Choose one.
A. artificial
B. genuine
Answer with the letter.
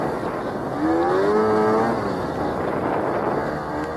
B